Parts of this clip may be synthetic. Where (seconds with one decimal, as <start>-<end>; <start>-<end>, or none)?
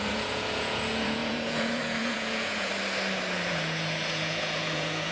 0.0-2.7; 3.5-5.1